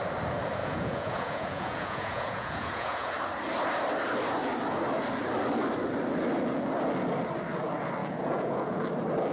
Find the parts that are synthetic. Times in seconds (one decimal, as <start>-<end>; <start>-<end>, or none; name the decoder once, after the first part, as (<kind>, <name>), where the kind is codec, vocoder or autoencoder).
0.6-3.1 (vocoder, Vocos); 8.0-8.8